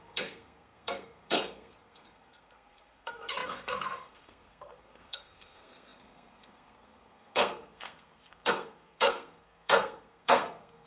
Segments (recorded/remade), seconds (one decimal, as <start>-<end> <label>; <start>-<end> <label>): 0.0-10.9 remade